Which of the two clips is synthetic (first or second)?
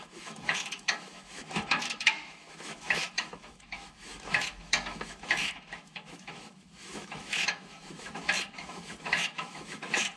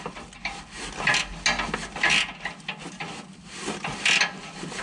first